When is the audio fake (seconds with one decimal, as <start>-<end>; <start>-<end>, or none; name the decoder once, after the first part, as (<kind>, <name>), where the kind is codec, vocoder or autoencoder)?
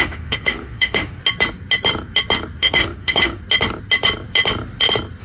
0.0-1.2 (autoencoder, DAC-VAE); 2.6-3.4